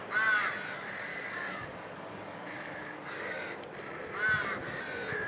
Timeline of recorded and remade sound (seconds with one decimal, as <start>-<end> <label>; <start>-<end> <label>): 0.0-1.1 recorded; 1.1-3.4 remade; 3.4-5.3 recorded